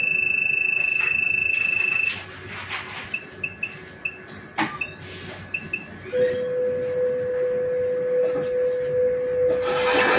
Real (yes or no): yes